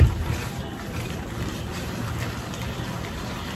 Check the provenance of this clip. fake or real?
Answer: real